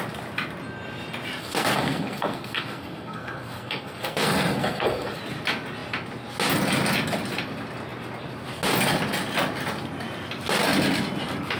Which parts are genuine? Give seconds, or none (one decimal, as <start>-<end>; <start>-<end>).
0.0-1.4; 5.2-11.6

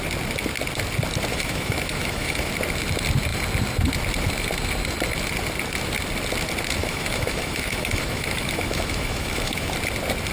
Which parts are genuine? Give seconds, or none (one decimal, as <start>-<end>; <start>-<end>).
0.0-1.3; 2.5-6.8; 9.7-10.3

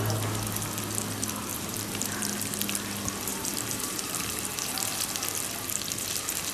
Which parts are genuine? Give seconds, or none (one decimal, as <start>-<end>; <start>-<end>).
0.0-1.5; 2.3-3.3; 4.8-6.5

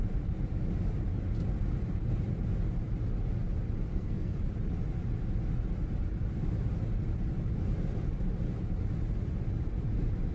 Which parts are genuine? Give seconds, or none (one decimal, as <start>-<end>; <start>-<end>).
0.0-3.9; 4.4-10.3

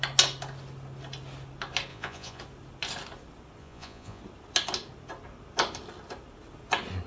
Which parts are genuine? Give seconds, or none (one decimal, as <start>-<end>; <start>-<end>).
0.0-1.9; 2.4-3.6; 4.2-7.1

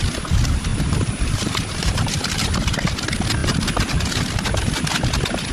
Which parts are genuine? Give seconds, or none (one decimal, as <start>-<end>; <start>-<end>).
0.0-0.7; 2.4-5.5

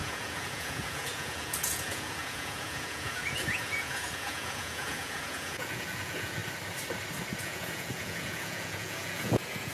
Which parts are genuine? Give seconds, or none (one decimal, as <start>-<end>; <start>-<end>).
6.4-7.4